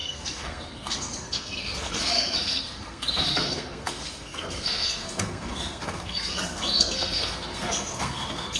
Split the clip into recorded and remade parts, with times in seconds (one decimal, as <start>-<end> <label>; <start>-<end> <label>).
0.0-8.6 remade